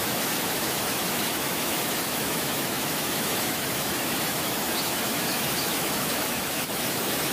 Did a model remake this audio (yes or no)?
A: yes